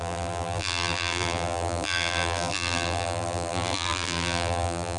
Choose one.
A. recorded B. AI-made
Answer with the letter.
B